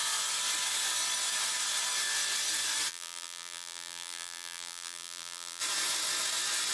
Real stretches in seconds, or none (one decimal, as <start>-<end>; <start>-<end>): 0.0-2.9; 5.6-6.7